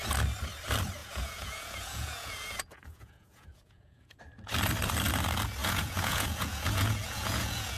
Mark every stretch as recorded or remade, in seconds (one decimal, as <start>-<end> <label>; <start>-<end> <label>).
0.0-1.0 recorded; 1.0-4.2 remade; 4.2-5.6 recorded; 5.6-7.8 remade